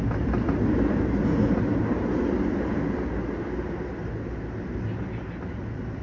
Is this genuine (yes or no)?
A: yes